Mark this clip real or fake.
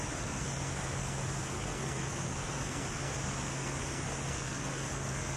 fake